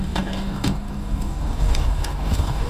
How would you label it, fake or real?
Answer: fake